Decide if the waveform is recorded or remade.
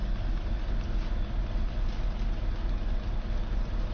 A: remade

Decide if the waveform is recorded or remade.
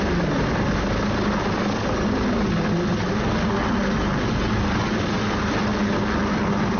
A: recorded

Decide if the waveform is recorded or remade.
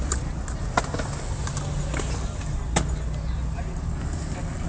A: recorded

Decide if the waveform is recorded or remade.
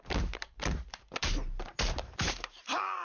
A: remade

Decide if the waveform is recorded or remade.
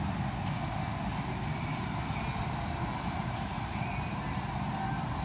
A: remade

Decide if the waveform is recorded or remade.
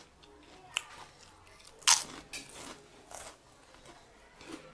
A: recorded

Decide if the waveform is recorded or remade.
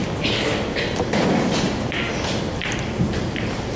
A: remade